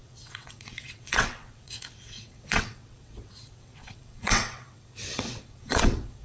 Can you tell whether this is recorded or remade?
remade